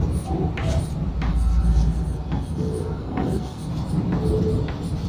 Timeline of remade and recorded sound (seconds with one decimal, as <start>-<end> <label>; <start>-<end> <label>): 0.0-1.3 recorded; 1.3-3.7 remade; 3.7-5.1 recorded